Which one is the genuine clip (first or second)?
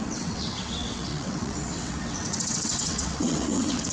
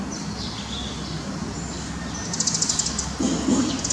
second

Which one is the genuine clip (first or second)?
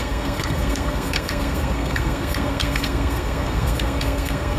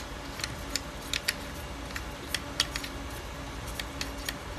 second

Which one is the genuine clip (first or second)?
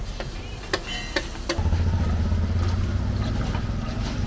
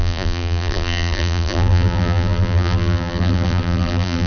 first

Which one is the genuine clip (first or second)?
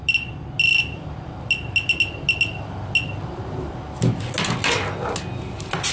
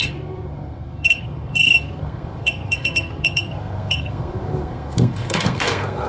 first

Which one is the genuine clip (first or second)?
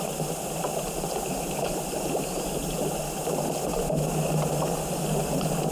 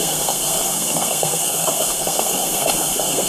first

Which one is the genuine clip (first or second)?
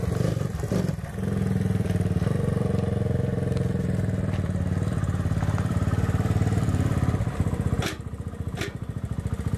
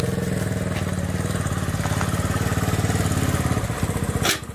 second